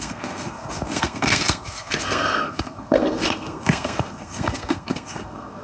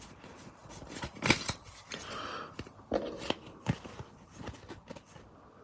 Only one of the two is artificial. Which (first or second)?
first